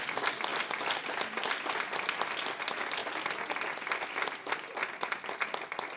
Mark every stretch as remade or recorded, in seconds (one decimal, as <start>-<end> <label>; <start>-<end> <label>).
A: 0.0-6.0 recorded